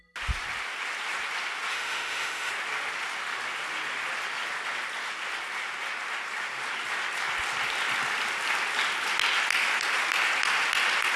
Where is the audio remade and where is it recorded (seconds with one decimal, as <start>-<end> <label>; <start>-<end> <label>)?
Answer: 0.0-1.7 recorded; 1.7-2.5 remade; 2.5-11.2 recorded